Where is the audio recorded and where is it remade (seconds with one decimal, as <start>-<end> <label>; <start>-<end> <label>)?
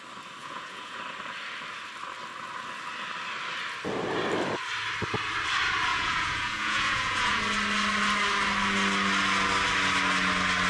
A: 0.0-0.4 recorded; 0.4-1.0 remade; 1.0-5.9 recorded; 5.9-7.4 remade; 7.4-10.7 recorded